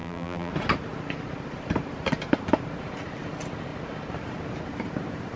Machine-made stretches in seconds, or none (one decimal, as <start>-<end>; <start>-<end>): 0.0-0.5